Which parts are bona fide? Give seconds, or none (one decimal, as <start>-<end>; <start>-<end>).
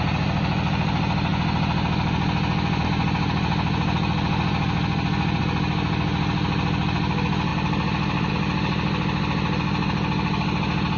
0.0-7.5; 8.3-11.0